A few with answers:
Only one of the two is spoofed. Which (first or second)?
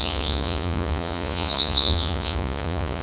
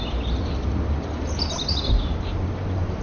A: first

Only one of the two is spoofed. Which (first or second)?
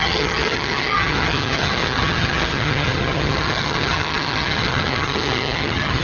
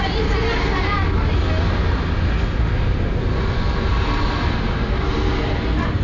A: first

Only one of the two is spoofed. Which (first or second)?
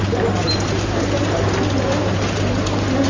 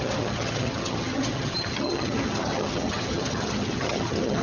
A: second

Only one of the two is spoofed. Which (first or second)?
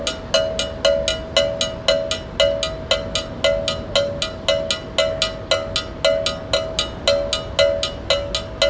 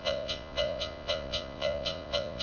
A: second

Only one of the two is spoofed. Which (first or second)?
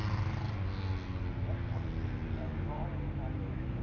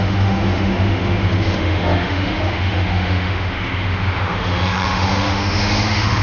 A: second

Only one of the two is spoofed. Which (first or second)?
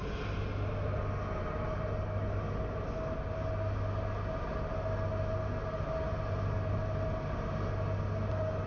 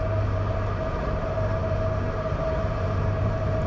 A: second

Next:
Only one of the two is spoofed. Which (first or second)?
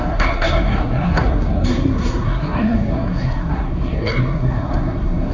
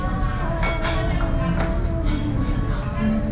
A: first